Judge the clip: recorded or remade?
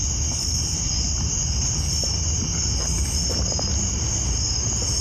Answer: recorded